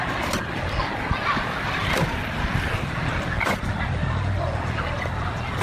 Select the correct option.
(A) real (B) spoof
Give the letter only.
A